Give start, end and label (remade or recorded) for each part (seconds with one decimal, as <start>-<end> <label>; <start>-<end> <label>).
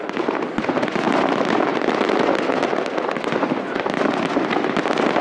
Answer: 0.0-5.2 recorded